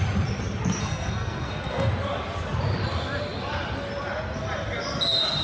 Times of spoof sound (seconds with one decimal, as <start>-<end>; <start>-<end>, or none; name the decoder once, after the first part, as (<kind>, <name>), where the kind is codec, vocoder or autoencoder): 0.8-1.9 (codec, SNAC)